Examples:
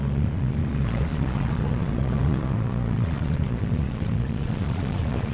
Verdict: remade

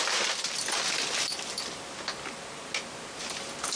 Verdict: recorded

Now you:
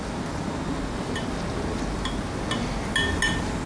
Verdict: recorded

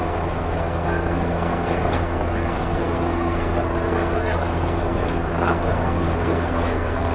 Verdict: remade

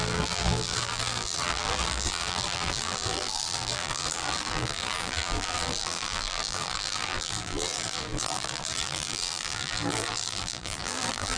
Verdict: remade